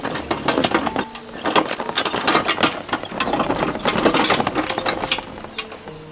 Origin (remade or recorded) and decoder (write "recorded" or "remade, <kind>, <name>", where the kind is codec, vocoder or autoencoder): recorded